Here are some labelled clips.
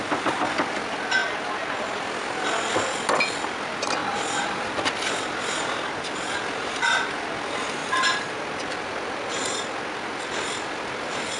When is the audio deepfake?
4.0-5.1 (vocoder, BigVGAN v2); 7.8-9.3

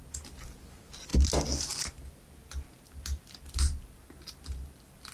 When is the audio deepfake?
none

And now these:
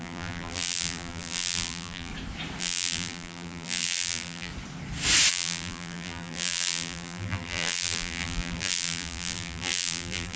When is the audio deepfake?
0.0-2.1 (vocoder, BigVGAN v2); 2.6-4.5; 5.3-10.4

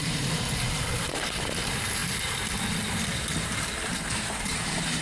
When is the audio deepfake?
0.0-5.0 (vocoder, BigVGAN v2)

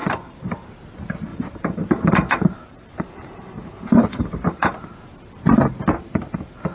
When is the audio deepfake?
0.0-0.7 (vocoder, BigVGAN v2); 1.3-4.7

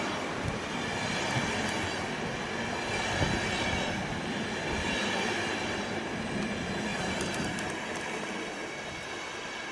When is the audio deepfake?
6.9-7.6 (vocoder, BigVGAN v2)

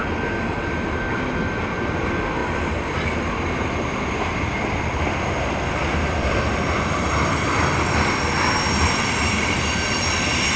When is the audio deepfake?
0.0-10.6 (vocoder, BigVGAN v2)